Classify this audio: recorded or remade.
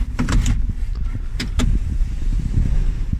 remade